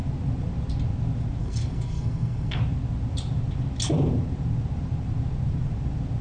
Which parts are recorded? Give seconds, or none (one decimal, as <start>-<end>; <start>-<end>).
0.0-1.4; 2.6-6.2